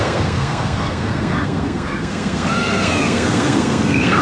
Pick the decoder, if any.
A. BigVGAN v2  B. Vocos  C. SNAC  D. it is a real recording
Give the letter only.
C